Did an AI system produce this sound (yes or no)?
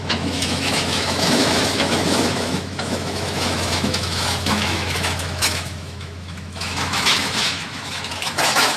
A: yes